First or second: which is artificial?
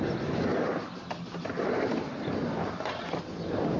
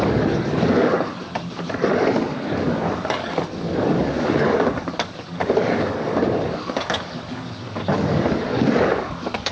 second